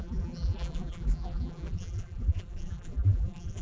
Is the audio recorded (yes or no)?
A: no